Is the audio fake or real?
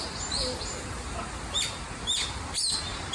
real